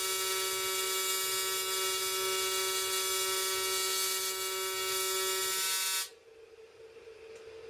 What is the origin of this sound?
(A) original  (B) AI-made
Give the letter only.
A